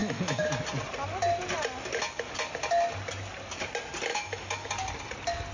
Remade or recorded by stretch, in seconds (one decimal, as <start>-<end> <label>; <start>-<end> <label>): 0.0-0.6 remade; 0.6-4.1 recorded; 4.1-4.7 remade; 4.7-5.5 recorded